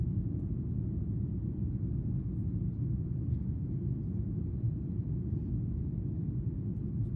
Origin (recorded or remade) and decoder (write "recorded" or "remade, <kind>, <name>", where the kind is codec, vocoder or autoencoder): recorded